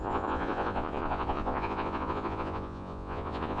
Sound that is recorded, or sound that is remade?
remade